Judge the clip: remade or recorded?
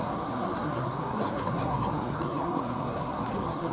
remade